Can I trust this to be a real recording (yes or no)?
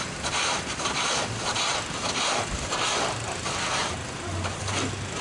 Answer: yes